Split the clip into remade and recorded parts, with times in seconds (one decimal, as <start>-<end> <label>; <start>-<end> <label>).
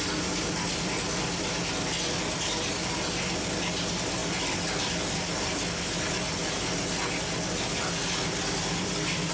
0.0-9.3 recorded